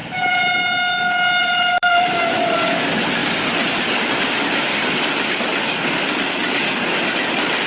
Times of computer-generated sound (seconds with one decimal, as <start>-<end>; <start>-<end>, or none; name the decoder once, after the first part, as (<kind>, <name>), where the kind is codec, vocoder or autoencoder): 1.4-3.2 (vocoder, BigVGAN v2); 4.2-5.5; 7.3-7.7